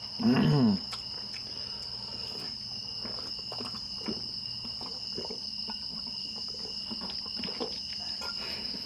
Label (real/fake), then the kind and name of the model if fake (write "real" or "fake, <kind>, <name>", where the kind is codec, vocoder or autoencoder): real